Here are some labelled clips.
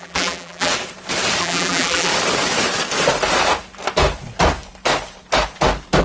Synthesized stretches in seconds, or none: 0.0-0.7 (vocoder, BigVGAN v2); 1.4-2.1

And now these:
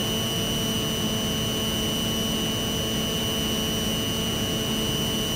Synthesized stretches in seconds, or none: none

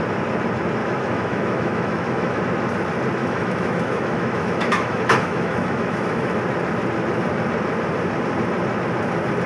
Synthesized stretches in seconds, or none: 0.8-2.4 (autoencoder, DAC-VAE); 3.2-6.4

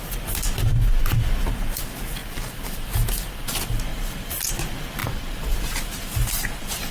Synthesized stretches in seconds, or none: 2.2-3.1 (vocoder, BigVGAN v2); 3.9-4.5; 5.0-6.9

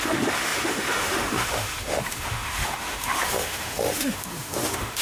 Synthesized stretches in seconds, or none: 0.0-5.0 (autoencoder, DAC-VAE)

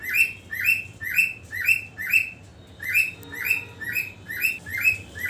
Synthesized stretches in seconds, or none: none